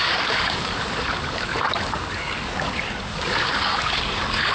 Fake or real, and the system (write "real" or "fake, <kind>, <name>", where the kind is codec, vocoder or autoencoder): fake, codec, DAC